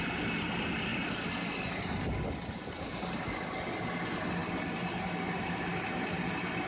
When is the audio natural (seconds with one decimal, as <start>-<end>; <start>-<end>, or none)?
0.0-6.7